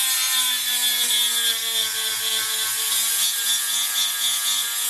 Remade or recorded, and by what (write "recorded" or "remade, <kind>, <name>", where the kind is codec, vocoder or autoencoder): recorded